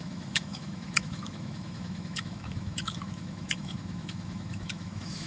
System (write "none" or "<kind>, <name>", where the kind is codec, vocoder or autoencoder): autoencoder, DAC-VAE